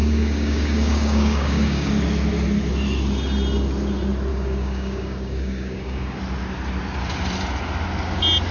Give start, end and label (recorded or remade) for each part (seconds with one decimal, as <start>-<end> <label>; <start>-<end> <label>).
0.0-1.9 remade; 1.9-4.3 recorded; 4.3-6.2 remade; 6.2-8.5 recorded